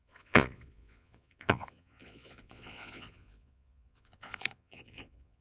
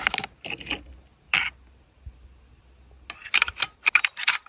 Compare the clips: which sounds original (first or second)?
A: second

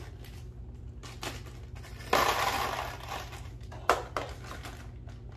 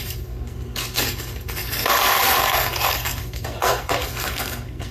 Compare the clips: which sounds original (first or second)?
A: first